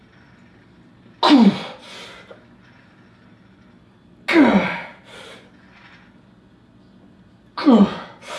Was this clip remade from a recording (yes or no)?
no